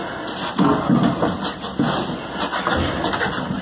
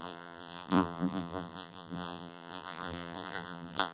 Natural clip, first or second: first